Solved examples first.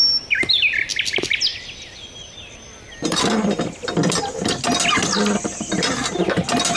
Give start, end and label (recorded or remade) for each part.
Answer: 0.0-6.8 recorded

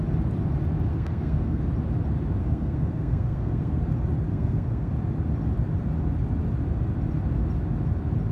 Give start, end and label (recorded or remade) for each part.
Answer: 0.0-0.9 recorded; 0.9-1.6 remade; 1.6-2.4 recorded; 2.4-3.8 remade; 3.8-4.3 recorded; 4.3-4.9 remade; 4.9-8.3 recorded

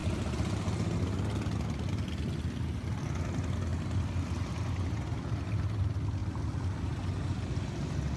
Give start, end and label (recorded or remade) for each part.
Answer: 0.0-8.2 recorded

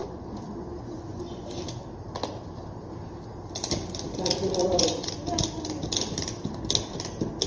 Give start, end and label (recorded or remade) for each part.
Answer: 0.0-1.6 remade; 1.6-4.6 recorded; 4.6-5.1 remade; 5.1-7.5 recorded

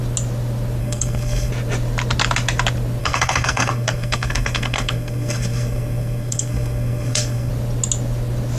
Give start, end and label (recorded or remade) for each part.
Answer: 0.0-0.8 recorded; 0.8-1.5 remade; 1.5-3.0 recorded; 3.0-7.5 remade; 7.5-8.6 recorded

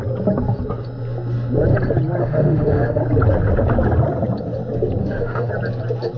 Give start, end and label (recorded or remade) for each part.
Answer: 0.0-2.2 recorded; 2.2-3.0 remade; 3.0-5.0 recorded; 5.0-5.5 remade; 5.5-6.2 recorded

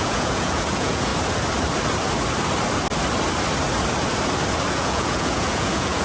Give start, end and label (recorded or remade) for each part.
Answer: 0.0-1.1 remade; 1.1-4.7 recorded; 4.7-6.0 remade

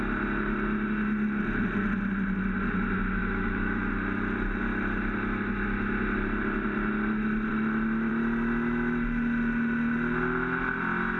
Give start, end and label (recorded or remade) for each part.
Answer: 0.0-3.2 recorded; 3.2-3.9 remade; 3.9-11.2 recorded